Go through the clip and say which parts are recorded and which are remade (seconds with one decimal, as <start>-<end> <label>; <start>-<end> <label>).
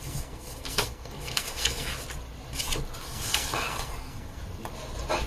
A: 0.0-1.9 remade; 1.9-3.0 recorded; 3.0-4.4 remade; 4.4-5.3 recorded